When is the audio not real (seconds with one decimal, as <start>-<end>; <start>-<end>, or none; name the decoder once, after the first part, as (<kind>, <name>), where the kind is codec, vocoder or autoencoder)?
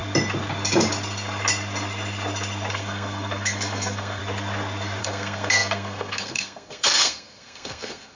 2.7-4.2 (codec, SNAC); 5.0-8.2